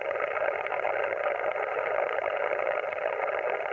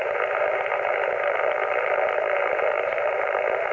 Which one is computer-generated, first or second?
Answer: first